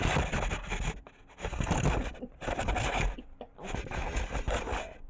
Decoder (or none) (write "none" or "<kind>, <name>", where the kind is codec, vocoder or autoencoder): none